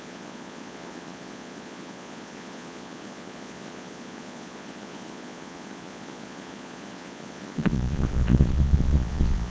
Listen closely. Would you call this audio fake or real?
fake